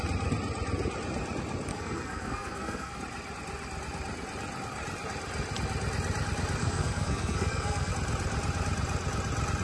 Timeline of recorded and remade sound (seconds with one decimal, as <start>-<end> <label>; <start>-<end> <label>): 0.0-1.7 recorded; 1.7-3.0 remade; 3.0-6.6 recorded; 6.6-7.9 remade; 7.9-9.6 recorded